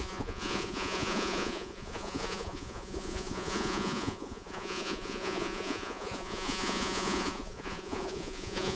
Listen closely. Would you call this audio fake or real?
fake